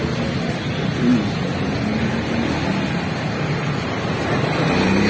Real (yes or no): yes